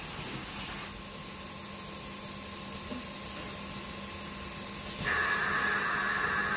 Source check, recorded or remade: recorded